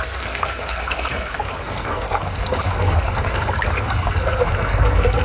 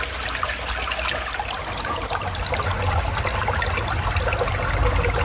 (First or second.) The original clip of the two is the second